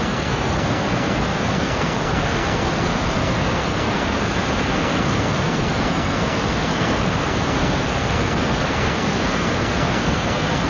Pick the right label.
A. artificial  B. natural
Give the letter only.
A